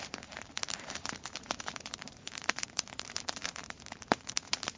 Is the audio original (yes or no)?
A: no